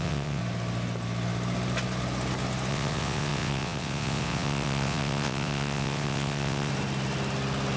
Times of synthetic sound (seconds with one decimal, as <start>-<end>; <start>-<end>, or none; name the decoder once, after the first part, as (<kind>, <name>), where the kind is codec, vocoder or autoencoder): 0.0-0.4 (vocoder, WaveNeXt); 2.7-6.7